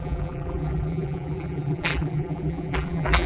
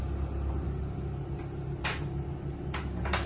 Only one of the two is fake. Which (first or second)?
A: first